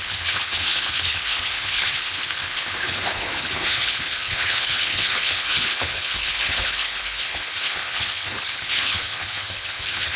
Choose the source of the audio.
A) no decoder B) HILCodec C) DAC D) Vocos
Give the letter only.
B